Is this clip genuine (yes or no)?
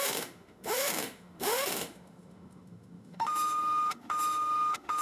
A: no